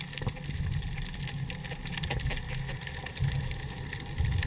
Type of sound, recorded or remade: recorded